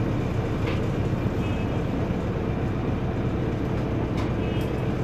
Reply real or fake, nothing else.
real